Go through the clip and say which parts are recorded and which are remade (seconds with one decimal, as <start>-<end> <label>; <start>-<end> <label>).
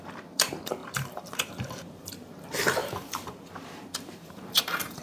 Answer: 0.0-5.0 remade